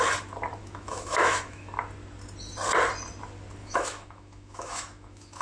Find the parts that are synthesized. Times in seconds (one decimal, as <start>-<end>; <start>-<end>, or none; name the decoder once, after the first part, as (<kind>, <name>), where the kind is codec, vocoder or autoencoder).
0.6-1.7 (autoencoder, DAC-VAE); 3.6-5.4